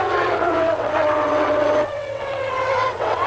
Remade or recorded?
remade